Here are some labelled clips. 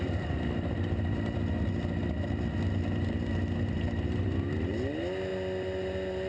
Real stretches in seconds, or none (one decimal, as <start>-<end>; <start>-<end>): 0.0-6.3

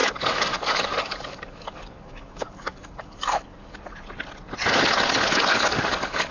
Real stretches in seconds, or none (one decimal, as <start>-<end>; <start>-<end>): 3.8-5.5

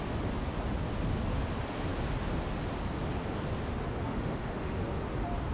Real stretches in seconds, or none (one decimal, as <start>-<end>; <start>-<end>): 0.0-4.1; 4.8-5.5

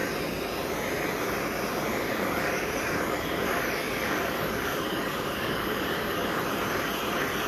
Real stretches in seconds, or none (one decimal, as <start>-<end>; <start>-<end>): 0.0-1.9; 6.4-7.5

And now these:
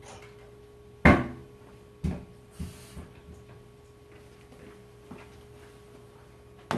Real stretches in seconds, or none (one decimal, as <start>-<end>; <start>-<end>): 0.0-6.8

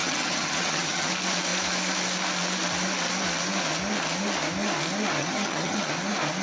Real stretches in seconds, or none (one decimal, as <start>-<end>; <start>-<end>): 1.1-5.2; 5.9-6.4

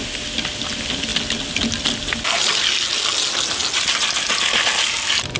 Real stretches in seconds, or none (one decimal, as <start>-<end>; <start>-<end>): 0.0-3.6; 4.4-5.4

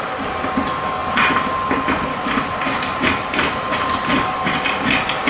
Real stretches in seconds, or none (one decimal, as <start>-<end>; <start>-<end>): 0.0-5.3